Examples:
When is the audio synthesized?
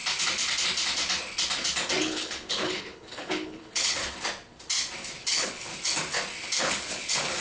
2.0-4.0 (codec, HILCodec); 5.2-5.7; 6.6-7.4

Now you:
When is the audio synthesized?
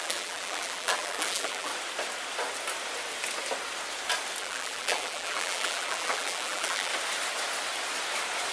0.0-1.7 (vocoder, BigVGAN v2); 4.4-6.9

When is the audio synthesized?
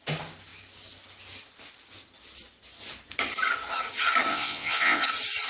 4.3-5.0 (vocoder, WaveNeXt)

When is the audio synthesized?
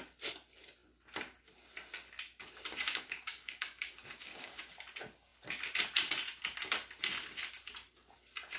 2.7-4.6 (codec, DAC)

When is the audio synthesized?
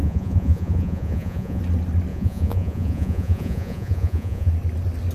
0.0-1.6 (vocoder, Vocos); 2.1-4.5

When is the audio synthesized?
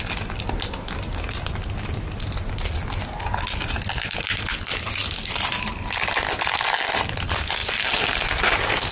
none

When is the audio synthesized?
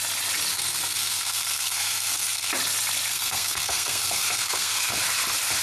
0.5-2.5 (codec, SNAC); 3.1-5.0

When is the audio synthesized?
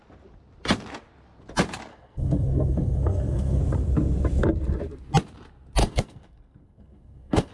1.9-3.6 (codec, SNAC); 5.8-7.5